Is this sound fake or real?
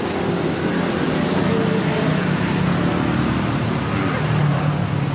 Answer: real